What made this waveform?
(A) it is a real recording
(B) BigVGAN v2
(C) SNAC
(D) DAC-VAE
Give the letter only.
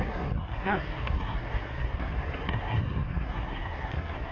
C